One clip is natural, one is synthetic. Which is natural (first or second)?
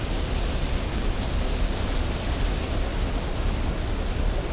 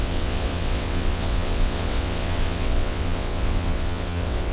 first